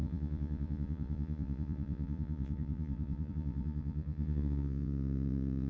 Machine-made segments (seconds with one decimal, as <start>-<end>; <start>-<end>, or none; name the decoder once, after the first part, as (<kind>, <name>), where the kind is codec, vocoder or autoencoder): 0.0-5.7 (vocoder, Vocos)